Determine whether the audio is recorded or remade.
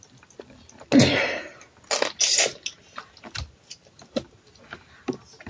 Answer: recorded